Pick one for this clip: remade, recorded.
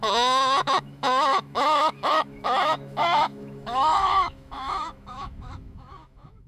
remade